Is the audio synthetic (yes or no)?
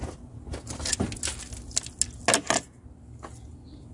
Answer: no